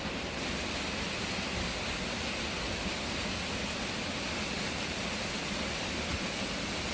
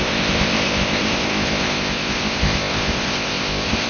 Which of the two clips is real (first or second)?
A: first